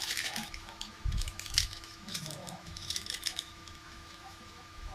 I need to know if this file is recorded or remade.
remade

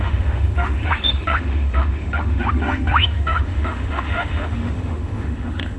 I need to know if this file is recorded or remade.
remade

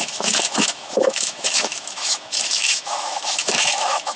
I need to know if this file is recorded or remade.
remade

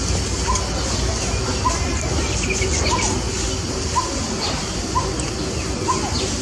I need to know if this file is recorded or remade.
recorded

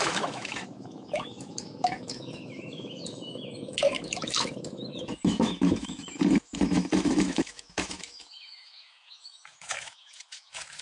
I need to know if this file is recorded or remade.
remade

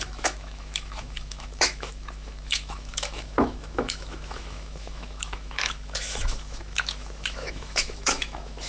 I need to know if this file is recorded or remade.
remade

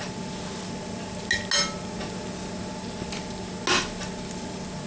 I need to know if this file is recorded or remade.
recorded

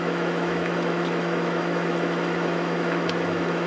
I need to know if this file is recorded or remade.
remade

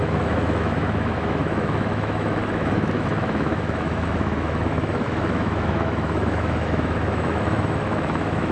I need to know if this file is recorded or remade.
remade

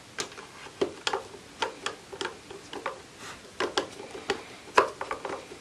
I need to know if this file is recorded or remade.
recorded